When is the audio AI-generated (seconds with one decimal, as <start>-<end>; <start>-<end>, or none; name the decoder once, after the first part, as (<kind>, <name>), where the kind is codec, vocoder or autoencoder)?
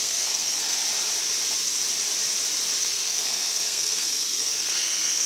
0.0-0.8 (codec, SNAC); 2.8-5.3